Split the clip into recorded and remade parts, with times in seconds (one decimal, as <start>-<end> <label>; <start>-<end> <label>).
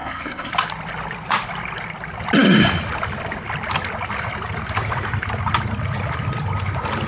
0.0-0.5 remade; 0.5-7.1 recorded